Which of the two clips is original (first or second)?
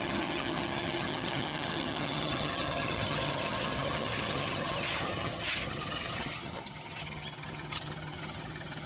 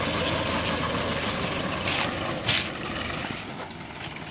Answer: second